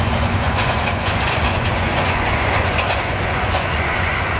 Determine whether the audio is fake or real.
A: fake